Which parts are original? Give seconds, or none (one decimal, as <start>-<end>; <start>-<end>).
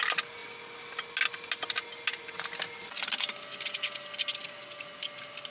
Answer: 0.0-5.5